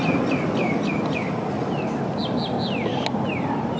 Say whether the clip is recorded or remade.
recorded